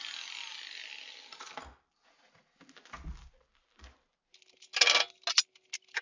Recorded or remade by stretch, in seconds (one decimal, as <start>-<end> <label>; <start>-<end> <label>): 0.0-6.0 recorded